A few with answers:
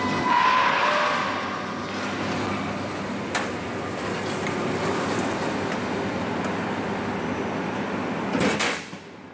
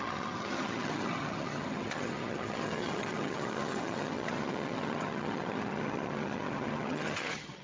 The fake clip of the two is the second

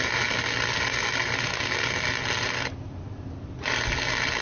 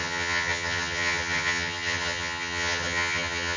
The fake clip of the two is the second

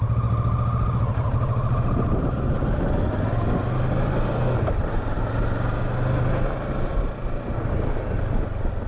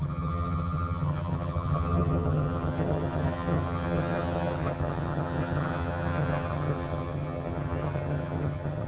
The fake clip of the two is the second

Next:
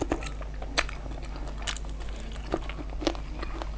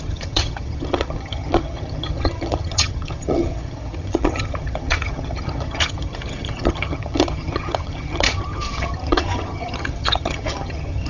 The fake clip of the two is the second